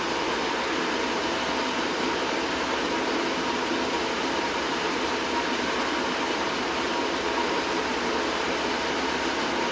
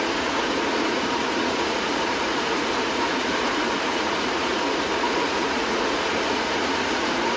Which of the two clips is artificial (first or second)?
second